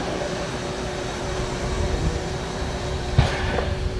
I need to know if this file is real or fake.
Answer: fake